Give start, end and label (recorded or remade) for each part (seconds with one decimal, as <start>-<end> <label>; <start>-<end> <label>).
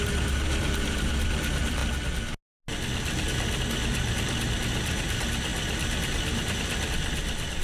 0.0-1.8 remade; 1.8-3.6 recorded; 3.6-7.6 remade